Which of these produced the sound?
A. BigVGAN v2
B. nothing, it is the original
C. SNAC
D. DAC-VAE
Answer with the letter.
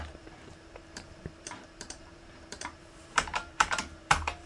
A